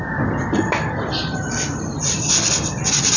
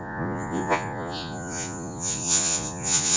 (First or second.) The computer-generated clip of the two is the second